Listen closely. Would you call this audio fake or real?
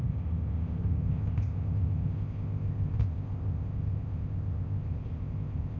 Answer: fake